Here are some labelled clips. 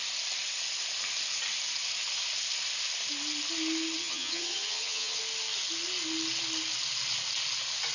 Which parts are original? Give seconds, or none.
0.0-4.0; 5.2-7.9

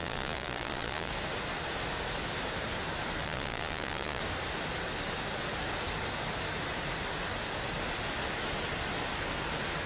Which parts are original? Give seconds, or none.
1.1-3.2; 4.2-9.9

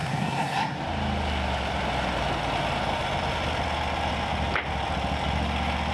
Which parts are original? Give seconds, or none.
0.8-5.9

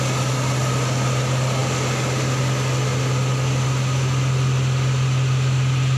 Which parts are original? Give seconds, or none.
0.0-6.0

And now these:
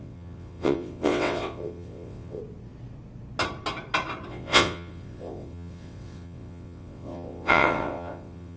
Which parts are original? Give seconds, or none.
2.4-4.3